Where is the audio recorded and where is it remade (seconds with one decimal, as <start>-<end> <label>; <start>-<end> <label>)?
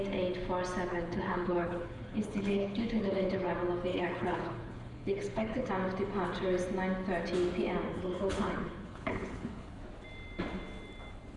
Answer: 0.0-0.9 recorded; 0.9-3.5 remade; 3.5-3.9 recorded; 3.9-5.7 remade; 5.7-7.9 recorded; 7.9-9.8 remade; 9.8-11.4 recorded